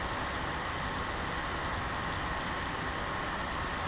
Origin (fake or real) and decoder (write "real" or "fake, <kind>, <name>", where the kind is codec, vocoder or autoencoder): real